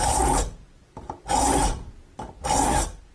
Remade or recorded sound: recorded